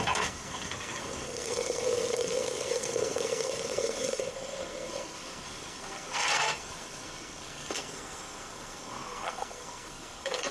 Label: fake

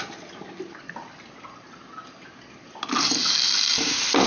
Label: real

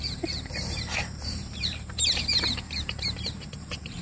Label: fake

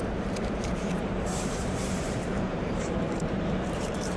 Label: fake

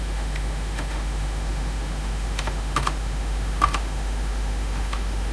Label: fake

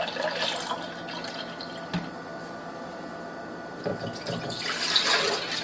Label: real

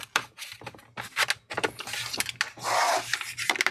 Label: real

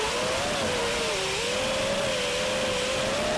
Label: real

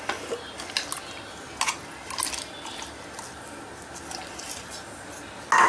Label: real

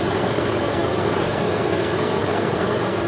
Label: fake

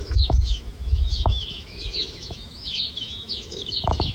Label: fake